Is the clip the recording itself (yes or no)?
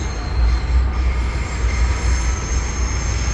yes